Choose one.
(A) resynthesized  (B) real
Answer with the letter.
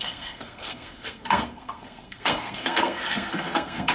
A